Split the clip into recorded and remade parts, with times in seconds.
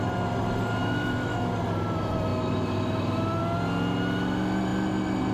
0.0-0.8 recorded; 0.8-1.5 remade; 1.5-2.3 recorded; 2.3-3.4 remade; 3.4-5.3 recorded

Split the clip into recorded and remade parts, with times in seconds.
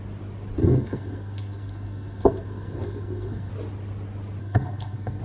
0.0-0.6 recorded; 0.6-3.5 remade; 3.5-4.4 recorded; 4.4-5.2 remade